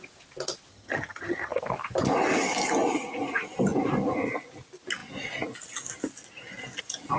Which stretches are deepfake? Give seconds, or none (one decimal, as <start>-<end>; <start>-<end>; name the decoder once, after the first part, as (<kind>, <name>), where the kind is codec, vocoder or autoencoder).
0.7-1.6 (vocoder, HiFi-GAN)